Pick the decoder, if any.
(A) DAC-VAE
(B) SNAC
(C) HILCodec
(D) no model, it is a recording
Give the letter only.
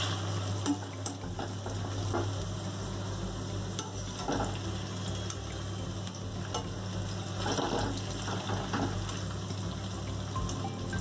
D